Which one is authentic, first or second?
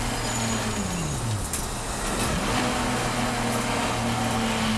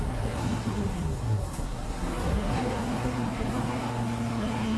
first